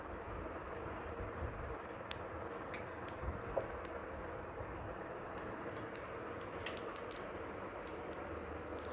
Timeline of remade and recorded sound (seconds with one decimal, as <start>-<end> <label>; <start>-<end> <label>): 0.0-8.9 recorded